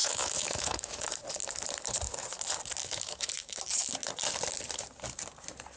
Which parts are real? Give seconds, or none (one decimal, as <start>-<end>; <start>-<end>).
1.1-2.8; 3.6-5.8